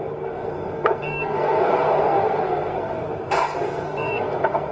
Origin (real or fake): fake